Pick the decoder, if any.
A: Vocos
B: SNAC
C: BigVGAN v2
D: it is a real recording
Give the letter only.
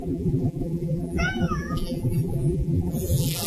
C